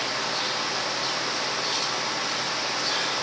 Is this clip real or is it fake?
real